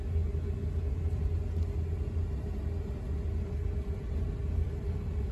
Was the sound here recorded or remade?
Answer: recorded